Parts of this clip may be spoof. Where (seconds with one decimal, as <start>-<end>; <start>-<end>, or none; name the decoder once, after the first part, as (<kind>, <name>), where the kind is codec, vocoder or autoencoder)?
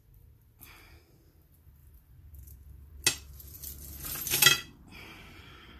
1.8-3.0 (vocoder, BigVGAN v2); 4.9-5.8